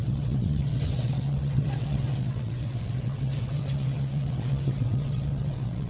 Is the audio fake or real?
fake